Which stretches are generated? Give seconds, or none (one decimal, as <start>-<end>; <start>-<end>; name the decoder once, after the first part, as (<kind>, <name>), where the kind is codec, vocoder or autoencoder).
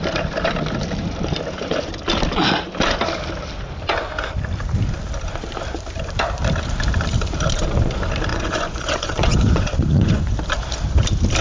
8.3-10.3 (vocoder, Vocos)